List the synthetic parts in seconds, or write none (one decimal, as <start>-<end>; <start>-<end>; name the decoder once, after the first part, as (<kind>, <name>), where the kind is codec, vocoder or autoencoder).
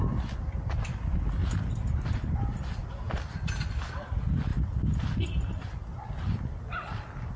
1.4-2.6 (vocoder, BigVGAN v2); 4.5-5.7